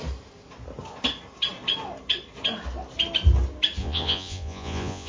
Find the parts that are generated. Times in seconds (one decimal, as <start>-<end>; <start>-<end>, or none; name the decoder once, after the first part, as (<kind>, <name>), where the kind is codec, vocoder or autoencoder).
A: 3.8-5.1 (vocoder, Vocos)